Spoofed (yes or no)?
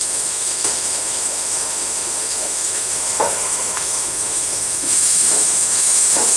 yes